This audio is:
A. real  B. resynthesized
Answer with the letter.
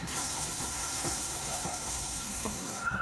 B